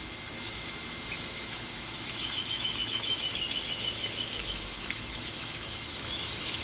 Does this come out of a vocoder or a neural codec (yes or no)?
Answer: yes